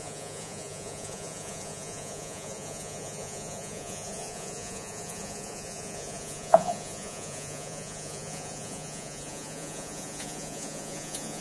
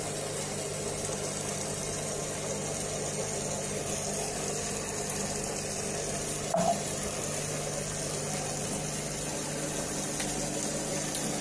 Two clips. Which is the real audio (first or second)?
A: second